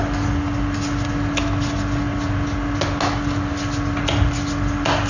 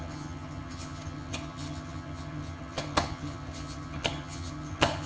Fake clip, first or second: second